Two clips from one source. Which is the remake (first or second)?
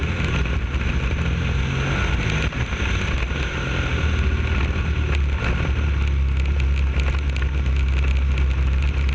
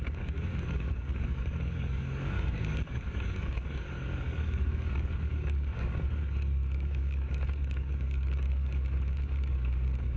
second